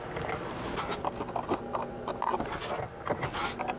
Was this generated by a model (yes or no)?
no